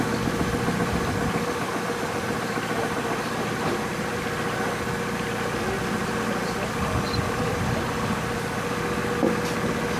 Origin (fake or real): real